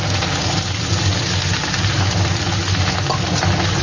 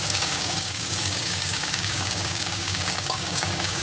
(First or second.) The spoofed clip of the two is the second